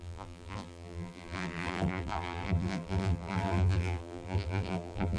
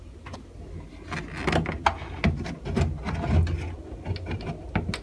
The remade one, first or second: first